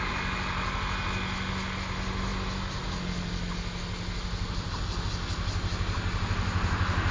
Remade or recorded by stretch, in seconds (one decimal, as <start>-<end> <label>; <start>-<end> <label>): 0.0-7.1 recorded